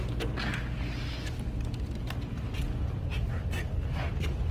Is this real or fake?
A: real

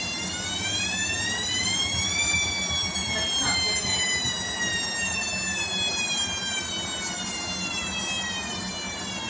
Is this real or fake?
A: real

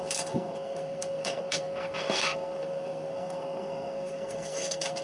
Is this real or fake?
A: fake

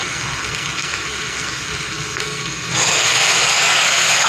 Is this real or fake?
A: fake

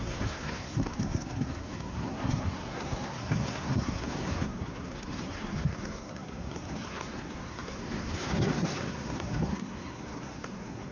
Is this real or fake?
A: fake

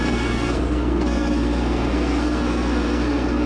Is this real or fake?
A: fake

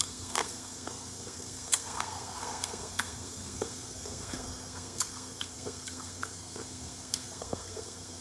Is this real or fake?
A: fake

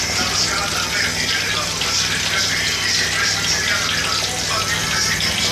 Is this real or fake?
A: real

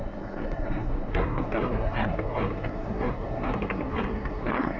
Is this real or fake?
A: fake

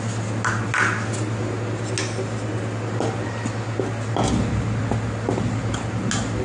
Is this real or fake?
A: real